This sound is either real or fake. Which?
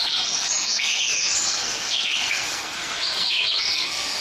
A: fake